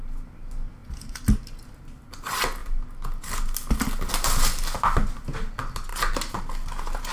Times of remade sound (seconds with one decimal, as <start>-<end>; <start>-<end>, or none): none